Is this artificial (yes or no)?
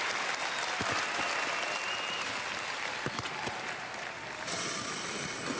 no